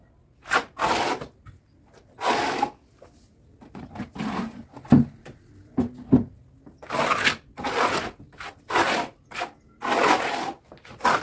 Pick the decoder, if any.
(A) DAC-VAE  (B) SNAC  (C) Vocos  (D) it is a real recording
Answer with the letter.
D